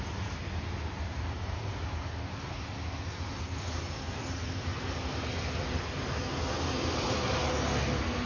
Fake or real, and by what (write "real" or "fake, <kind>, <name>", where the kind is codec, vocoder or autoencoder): real